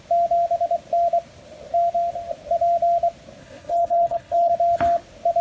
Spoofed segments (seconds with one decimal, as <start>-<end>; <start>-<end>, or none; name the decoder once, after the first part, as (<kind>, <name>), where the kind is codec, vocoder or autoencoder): 3.4-4.5 (codec, HILCodec)